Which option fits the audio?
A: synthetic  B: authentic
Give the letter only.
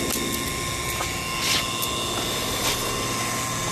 B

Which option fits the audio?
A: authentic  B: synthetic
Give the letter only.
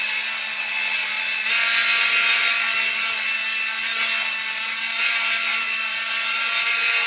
A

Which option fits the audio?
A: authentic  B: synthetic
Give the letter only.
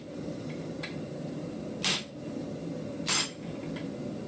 A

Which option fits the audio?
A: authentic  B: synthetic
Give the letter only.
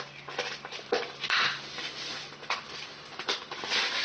A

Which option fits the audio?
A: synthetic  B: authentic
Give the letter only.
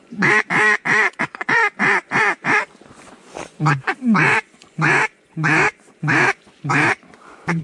A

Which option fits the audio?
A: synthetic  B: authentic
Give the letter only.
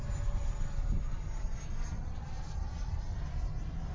B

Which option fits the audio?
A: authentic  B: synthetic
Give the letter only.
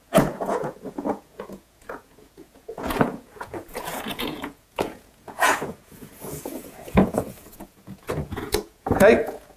B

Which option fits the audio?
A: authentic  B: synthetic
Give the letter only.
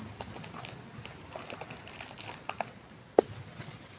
A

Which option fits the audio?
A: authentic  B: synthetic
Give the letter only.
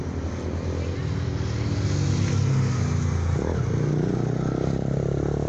A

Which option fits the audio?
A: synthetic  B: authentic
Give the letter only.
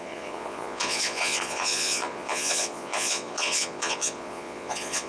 A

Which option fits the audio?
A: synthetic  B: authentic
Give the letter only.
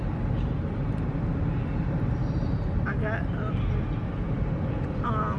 B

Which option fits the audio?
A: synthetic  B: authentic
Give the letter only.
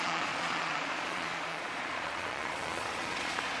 A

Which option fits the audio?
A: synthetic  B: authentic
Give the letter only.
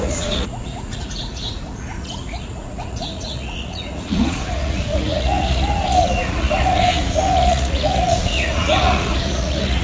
A